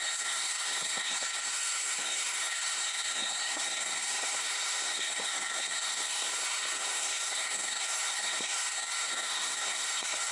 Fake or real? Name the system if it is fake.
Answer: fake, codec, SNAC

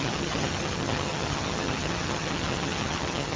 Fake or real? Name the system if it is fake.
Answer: fake, vocoder, HiFi-GAN